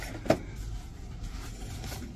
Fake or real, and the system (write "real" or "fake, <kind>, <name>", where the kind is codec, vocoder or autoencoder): real